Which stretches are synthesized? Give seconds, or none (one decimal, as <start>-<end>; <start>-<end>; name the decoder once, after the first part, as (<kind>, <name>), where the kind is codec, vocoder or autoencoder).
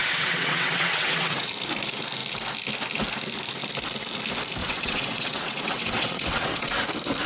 0.0-1.5 (vocoder, WaveNeXt); 4.6-6.7